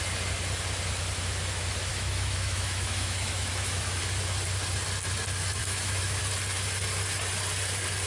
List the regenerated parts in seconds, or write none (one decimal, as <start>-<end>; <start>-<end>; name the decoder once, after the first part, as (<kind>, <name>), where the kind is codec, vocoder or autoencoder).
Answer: 1.9-4.0 (autoencoder, DAC-VAE); 5.6-6.2